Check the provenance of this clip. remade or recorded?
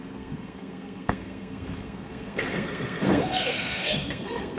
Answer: remade